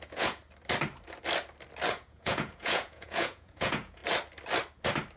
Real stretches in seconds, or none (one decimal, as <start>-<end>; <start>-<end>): 0.4-1.9; 4.0-5.2